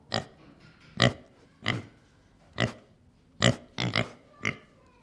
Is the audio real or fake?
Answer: real